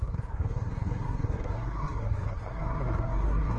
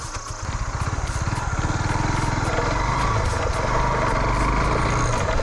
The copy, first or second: first